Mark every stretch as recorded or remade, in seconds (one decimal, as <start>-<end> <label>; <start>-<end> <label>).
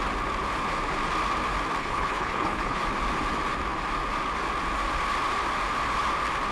0.0-1.8 recorded; 1.8-2.8 remade; 2.8-6.5 recorded